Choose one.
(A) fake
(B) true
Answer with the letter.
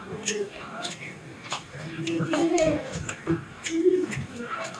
A